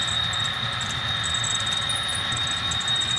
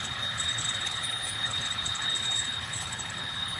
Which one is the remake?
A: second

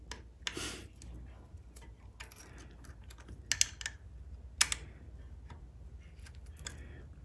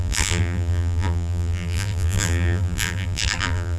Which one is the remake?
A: second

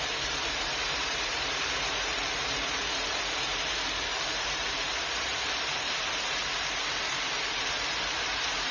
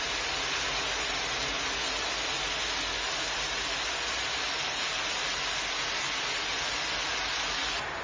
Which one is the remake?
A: first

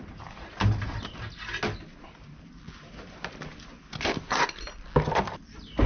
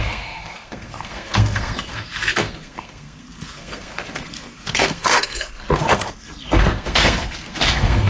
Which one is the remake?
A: second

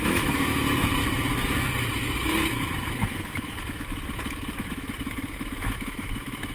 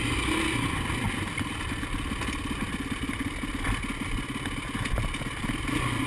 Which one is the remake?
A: first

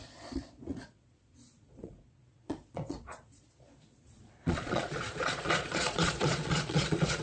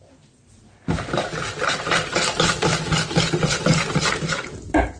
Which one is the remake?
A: first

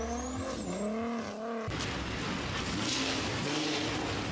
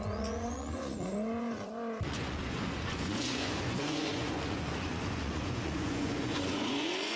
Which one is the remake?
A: second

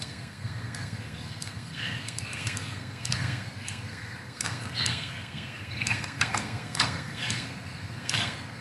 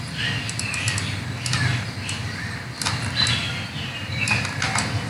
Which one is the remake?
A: first